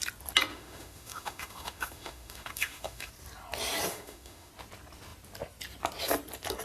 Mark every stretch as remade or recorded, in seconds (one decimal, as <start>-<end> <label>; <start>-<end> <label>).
0.0-0.5 recorded; 0.5-3.1 remade; 3.1-3.9 recorded; 3.9-4.5 remade; 4.5-6.6 recorded